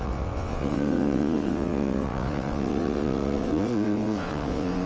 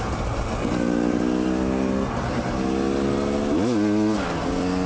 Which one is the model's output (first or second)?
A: first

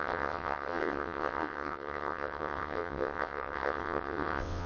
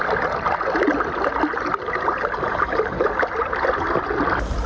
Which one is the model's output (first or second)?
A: first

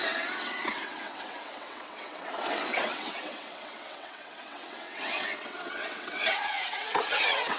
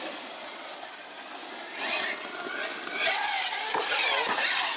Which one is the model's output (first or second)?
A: first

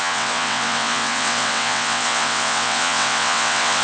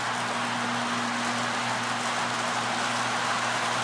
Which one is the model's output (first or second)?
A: first